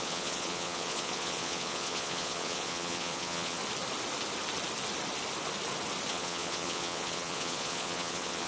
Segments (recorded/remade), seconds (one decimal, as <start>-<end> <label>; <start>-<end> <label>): 0.0-3.6 remade; 3.6-6.1 recorded; 6.1-8.5 remade